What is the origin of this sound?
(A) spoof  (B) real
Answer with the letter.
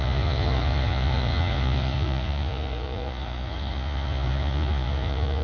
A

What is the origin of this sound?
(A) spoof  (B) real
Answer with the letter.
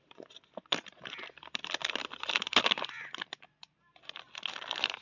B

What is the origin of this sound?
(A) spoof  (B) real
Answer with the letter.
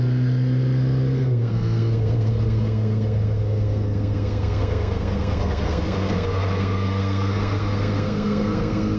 A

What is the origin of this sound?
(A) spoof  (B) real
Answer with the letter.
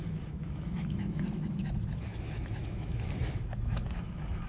A